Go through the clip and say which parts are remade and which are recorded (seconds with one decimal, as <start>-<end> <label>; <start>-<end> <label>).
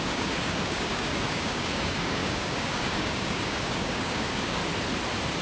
0.0-4.6 remade; 4.6-5.4 recorded